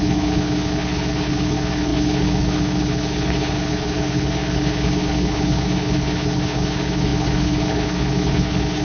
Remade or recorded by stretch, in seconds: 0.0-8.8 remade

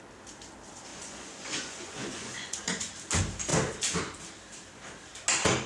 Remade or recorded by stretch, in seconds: 0.0-0.9 recorded; 0.9-2.9 remade; 2.9-5.7 recorded